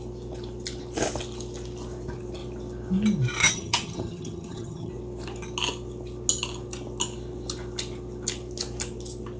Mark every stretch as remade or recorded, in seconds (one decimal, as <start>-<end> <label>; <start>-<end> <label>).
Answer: 0.0-3.4 recorded; 3.4-4.9 remade; 4.9-9.4 recorded